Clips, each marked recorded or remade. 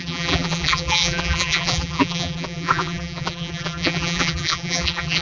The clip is remade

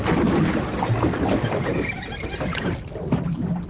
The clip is recorded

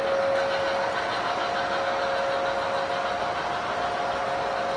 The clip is recorded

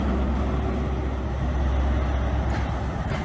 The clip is recorded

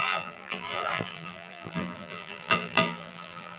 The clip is remade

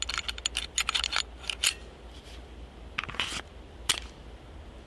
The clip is recorded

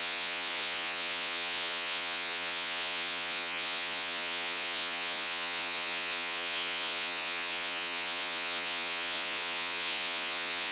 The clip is remade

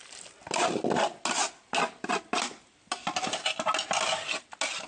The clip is recorded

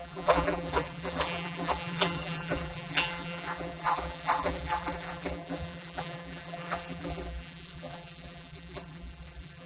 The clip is remade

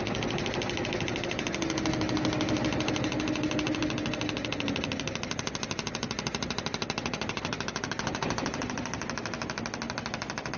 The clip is recorded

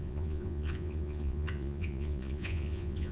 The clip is remade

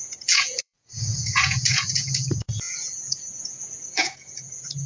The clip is remade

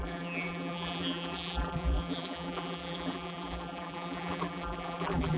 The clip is remade